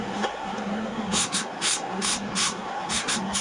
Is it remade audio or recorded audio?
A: remade